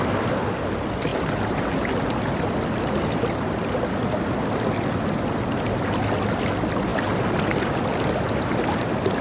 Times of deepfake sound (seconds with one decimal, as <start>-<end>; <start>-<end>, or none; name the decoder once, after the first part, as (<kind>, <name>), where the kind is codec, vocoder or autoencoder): none